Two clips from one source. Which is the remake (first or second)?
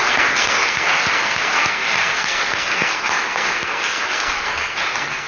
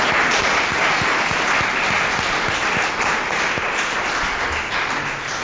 first